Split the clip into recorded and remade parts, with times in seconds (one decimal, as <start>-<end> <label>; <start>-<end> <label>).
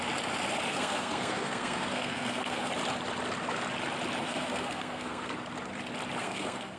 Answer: 0.0-0.7 recorded; 0.7-2.7 remade; 2.7-4.2 recorded; 4.2-5.3 remade; 5.3-6.2 recorded; 6.2-6.8 remade